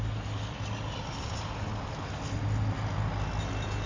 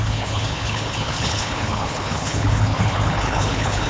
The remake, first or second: second